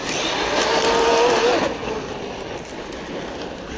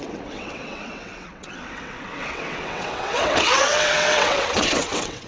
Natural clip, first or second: first